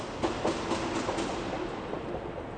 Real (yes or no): yes